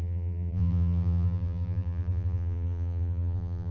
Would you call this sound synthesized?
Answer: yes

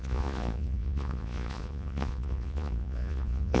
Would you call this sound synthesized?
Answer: yes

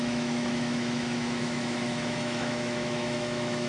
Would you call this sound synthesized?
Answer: yes